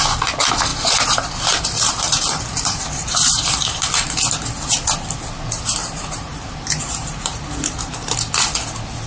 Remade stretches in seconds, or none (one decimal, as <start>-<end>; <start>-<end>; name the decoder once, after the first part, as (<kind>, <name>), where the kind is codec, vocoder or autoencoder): 0.7-4.5 (vocoder, BigVGAN v2); 5.8-8.3